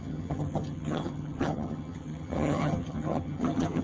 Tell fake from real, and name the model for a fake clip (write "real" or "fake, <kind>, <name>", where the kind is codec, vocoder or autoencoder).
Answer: fake, vocoder, HiFi-GAN